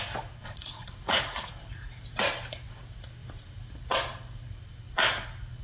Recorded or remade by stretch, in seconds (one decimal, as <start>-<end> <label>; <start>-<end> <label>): 0.0-0.4 recorded; 0.4-1.5 remade; 1.5-5.6 recorded